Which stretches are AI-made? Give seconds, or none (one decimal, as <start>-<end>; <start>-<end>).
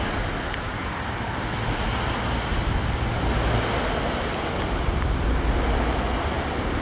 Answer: none